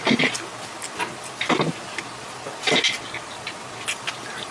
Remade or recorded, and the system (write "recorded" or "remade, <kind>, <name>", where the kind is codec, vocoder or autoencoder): recorded